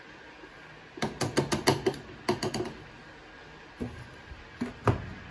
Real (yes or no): yes